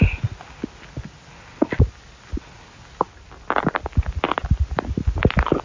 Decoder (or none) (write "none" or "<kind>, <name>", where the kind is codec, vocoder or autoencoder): none